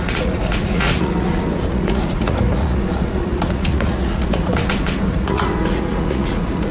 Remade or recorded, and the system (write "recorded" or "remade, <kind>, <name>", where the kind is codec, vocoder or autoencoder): remade, vocoder, Vocos